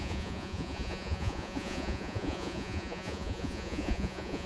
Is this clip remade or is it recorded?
remade